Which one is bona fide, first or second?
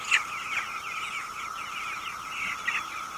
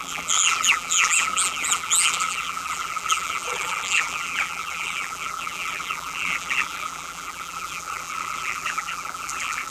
first